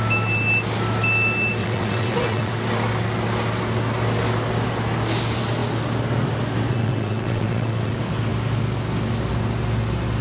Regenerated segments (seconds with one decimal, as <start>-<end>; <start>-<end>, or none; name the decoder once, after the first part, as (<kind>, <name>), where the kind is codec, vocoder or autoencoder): 1.6-2.5 (vocoder, WaveNeXt); 6.7-7.9